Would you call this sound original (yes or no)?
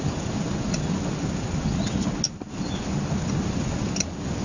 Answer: yes